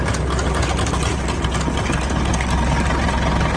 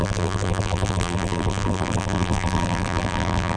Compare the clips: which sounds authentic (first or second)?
first